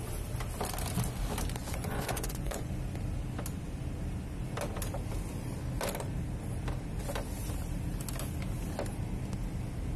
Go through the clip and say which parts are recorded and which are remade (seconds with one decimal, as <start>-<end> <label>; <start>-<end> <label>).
0.0-1.6 recorded; 1.6-2.7 remade; 2.7-10.0 recorded